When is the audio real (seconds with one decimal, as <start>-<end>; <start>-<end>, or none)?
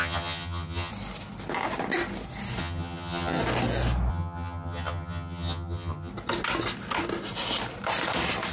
0.9-2.6; 3.4-4.1; 6.1-8.5